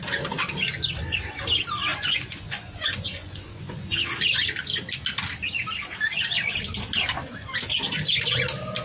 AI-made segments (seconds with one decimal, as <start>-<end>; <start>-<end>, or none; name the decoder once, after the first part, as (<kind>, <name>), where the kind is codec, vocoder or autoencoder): 1.9-4.0 (vocoder, Vocos)